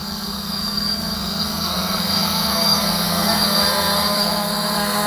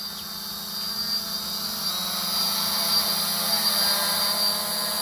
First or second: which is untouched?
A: second